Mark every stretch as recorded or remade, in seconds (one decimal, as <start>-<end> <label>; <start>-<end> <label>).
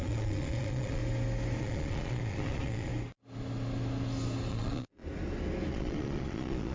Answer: 0.0-1.0 remade; 1.0-1.6 recorded; 1.6-2.9 remade; 2.9-4.5 recorded; 4.5-5.0 remade; 5.0-5.7 recorded; 5.7-6.7 remade